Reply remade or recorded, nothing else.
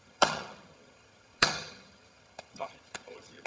remade